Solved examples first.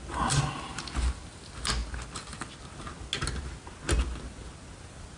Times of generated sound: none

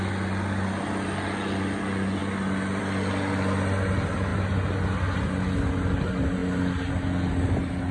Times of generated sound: none

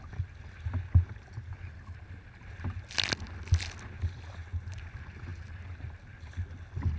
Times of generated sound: none

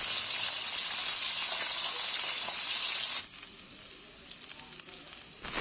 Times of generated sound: none

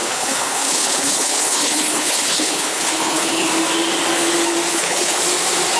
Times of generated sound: 0.0-3.5 (codec, HILCodec); 4.7-5.2